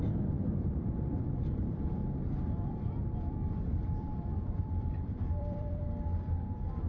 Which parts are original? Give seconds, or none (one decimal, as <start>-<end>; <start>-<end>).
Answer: 2.0-3.3; 5.8-6.9